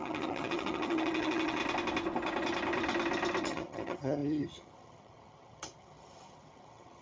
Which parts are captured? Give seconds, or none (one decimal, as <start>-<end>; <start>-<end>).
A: 1.6-3.4

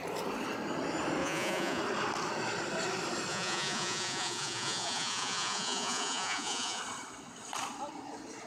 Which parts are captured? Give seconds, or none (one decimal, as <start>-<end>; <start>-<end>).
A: 0.0-1.2; 1.8-3.3; 6.8-8.5

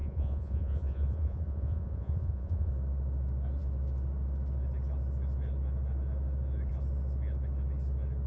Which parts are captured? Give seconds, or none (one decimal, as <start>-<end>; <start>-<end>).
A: 2.7-8.3